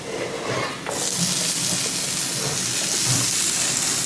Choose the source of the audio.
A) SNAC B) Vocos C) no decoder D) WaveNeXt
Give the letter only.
C